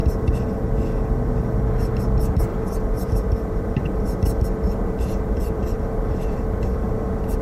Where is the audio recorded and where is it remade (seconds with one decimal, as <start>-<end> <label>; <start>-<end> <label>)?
0.0-2.5 recorded; 2.5-6.9 remade; 6.9-7.4 recorded

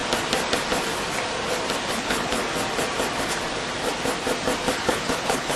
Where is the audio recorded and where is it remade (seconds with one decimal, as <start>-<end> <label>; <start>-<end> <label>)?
0.0-1.9 recorded; 1.9-2.4 remade; 2.4-4.7 recorded; 4.7-5.6 remade

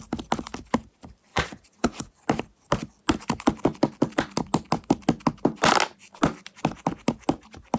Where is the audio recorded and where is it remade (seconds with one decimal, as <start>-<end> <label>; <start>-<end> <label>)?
0.0-1.3 recorded; 1.3-2.1 remade; 2.1-7.8 recorded

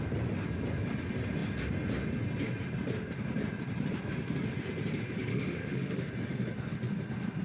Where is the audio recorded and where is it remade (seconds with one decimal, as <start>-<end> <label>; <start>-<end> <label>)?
0.0-5.3 recorded; 5.3-6.1 remade; 6.1-7.4 recorded

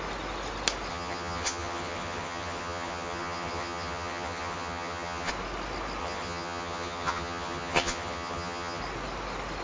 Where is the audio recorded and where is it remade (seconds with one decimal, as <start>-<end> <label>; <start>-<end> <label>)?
0.0-0.9 recorded; 0.9-5.3 remade; 5.3-6.0 recorded; 6.0-8.8 remade; 8.8-9.6 recorded

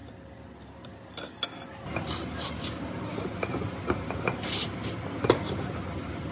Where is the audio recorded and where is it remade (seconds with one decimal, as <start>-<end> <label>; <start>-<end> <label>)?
0.0-6.3 recorded